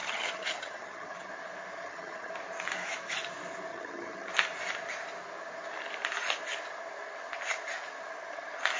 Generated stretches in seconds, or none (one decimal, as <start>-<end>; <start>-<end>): 0.0-1.3; 1.8-2.3; 3.7-4.3